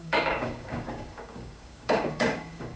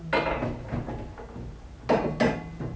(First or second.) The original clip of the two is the second